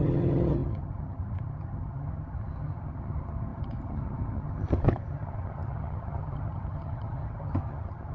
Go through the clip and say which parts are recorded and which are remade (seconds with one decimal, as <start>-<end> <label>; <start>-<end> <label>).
0.0-8.1 remade